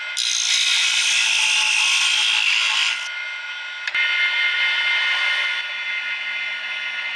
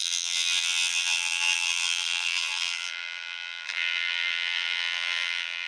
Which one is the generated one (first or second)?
second